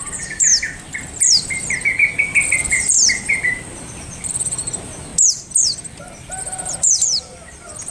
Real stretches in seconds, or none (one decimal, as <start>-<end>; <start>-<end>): 0.5-2.2; 5.1-6.4